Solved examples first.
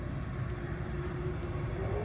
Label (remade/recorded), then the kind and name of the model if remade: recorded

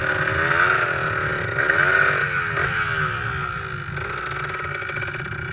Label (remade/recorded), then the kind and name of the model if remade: recorded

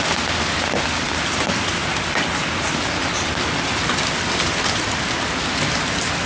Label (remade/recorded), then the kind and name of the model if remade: recorded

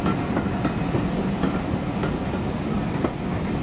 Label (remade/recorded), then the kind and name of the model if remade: recorded